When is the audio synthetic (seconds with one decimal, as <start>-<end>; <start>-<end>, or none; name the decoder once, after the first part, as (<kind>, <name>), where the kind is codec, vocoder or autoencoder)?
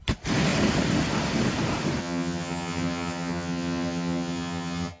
2.0-5.0 (vocoder, HiFi-GAN)